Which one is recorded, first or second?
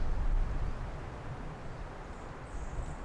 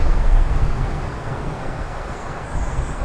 first